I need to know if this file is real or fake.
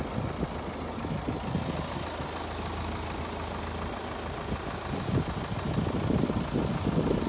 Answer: real